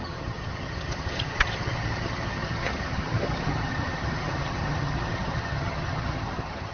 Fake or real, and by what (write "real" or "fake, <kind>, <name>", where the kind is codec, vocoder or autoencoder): fake, vocoder, HiFi-GAN